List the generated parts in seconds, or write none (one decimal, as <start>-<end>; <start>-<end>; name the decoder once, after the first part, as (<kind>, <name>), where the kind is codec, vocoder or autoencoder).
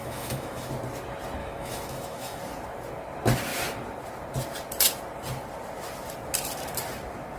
0.0-0.7 (autoencoder, DAC-VAE); 1.4-2.4